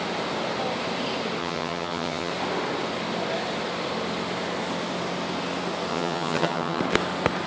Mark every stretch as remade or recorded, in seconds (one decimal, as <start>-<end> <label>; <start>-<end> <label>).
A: 0.0-1.4 recorded; 1.4-2.3 remade; 2.3-5.9 recorded; 5.9-6.8 remade; 6.8-7.5 recorded